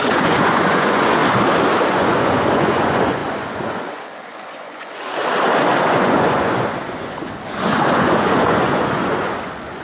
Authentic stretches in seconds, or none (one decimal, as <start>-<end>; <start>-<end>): 1.2-1.9; 5.2-5.8